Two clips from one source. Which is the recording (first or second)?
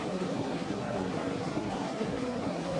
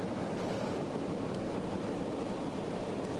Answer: second